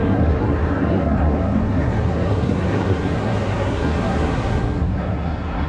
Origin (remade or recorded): remade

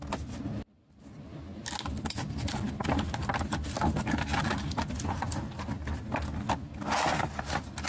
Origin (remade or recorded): recorded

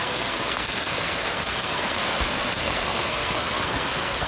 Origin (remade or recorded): remade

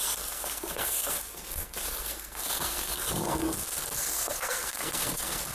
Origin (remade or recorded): remade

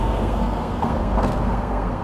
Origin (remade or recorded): remade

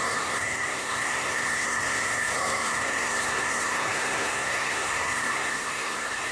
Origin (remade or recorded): remade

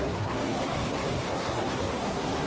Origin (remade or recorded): remade